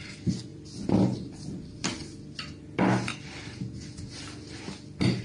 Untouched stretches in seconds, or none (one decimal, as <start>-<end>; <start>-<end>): 0.0-5.2